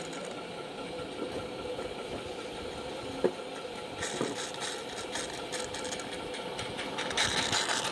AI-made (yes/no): no